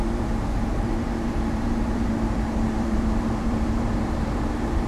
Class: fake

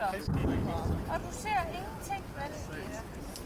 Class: real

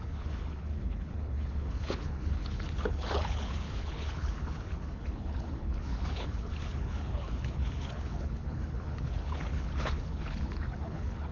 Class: fake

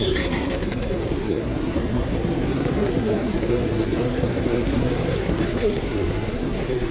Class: fake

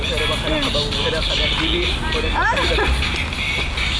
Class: real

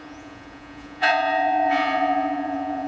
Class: fake